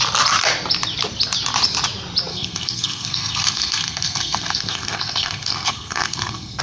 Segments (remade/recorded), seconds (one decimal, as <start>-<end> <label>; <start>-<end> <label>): 0.0-2.3 recorded; 2.3-6.6 remade